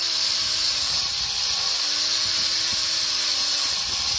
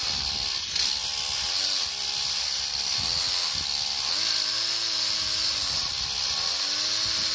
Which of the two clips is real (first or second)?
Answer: second